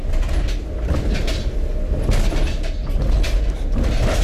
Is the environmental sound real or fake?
real